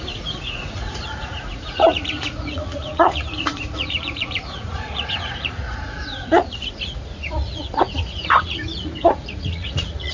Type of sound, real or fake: fake